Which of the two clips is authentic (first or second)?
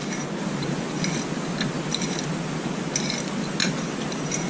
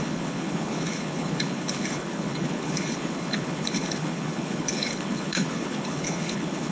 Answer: first